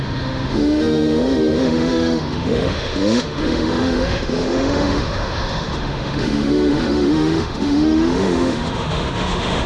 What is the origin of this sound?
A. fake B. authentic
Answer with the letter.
A